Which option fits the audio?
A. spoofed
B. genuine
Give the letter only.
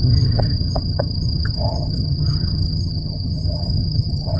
A